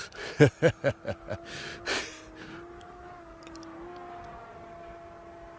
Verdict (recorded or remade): recorded